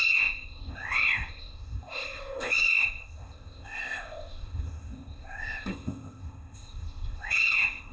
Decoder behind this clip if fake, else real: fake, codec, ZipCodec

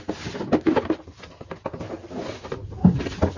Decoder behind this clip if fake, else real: real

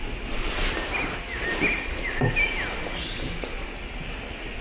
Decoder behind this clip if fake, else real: real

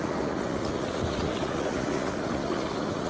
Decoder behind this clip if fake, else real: fake, vocoder, Vocos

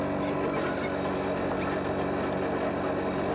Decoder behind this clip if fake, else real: real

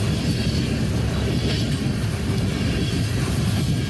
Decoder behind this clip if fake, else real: real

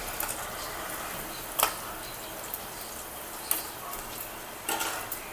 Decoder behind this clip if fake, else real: real